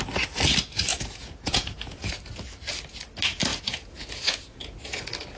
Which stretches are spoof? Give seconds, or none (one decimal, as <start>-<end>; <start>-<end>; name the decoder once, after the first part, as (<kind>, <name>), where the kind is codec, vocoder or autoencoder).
0.9-2.2 (vocoder, Vocos); 3.5-5.0

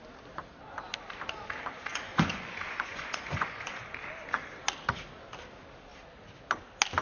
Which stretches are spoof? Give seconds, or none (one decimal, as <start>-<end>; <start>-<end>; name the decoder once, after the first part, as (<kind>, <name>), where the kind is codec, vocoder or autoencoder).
1.9-3.8 (vocoder, Vocos)